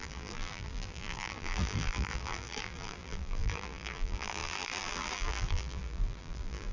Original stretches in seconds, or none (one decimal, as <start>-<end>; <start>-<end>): none